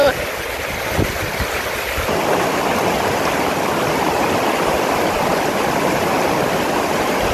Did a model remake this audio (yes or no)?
yes